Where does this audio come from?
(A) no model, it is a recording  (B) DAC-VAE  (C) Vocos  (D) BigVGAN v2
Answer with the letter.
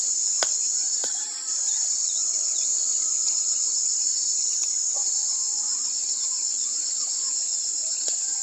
D